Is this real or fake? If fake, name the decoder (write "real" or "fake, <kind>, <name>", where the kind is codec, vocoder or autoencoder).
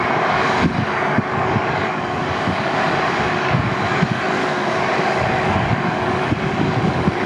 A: fake, codec, DAC